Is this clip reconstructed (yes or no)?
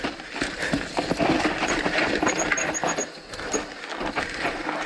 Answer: no